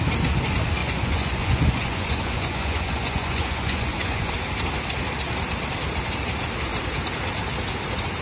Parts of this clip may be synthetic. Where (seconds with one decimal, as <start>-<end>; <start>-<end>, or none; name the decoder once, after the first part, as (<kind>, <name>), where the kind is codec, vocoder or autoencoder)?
0.8-4.3 (vocoder, Vocos)